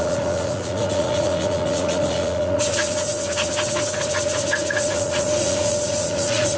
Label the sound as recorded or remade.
remade